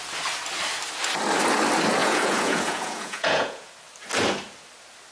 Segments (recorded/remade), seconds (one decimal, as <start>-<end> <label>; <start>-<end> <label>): 0.0-2.0 recorded; 2.0-3.7 remade; 3.7-5.1 recorded